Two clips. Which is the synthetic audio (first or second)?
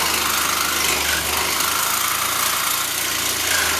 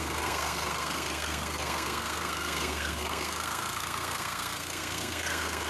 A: second